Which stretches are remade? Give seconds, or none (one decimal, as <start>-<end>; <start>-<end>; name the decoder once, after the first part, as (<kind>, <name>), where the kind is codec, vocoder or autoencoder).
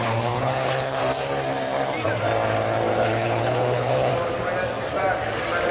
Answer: 0.0-1.0 (codec, HILCodec); 2.9-4.1